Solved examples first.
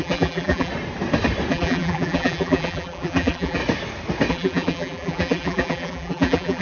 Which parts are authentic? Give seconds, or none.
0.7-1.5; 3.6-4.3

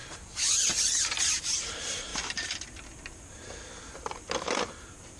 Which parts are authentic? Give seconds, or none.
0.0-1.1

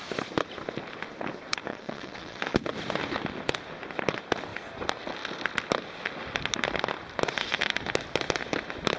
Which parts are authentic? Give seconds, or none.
0.0-1.7; 2.4-9.0

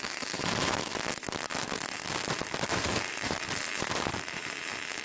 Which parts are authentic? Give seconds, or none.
0.9-2.7